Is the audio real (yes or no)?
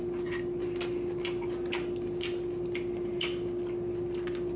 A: yes